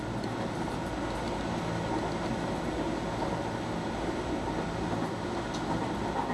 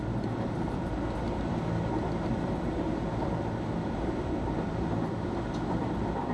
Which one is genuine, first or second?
first